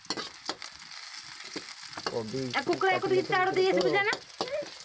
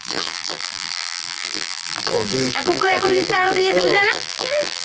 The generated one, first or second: second